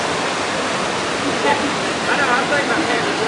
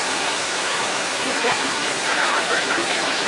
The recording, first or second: first